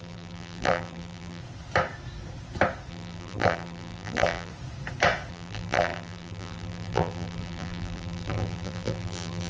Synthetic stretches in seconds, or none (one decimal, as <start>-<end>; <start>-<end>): 0.0-1.4; 2.9-4.5; 5.3-9.5

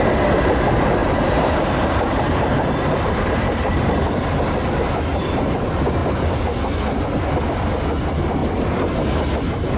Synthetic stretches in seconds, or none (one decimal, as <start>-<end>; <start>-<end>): 1.0-3.1; 5.1-5.6; 8.4-9.2